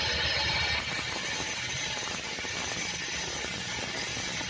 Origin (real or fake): real